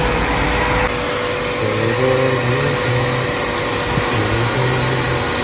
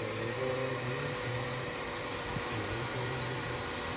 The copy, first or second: second